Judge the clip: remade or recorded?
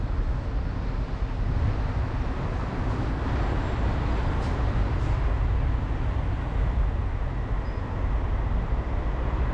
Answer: recorded